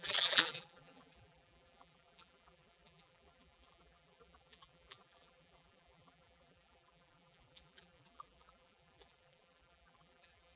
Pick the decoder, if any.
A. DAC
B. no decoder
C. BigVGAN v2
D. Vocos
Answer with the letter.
C